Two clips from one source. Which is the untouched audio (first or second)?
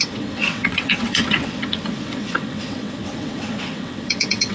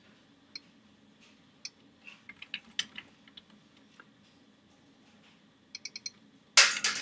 second